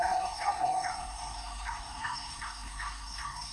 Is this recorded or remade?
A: remade